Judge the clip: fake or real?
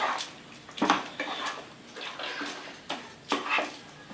real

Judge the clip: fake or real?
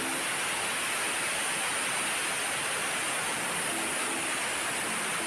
real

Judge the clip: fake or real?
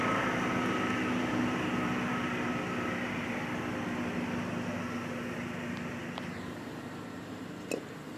real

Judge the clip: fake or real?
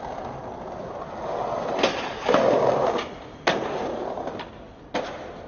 real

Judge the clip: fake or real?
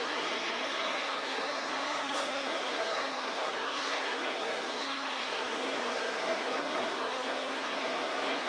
fake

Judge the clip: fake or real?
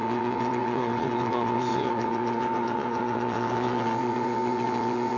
fake